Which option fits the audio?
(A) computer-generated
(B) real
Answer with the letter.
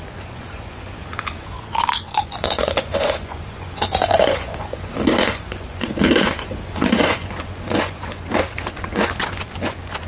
A